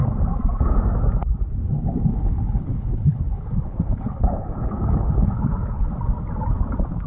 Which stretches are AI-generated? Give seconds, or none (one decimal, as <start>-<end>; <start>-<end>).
2.1-5.9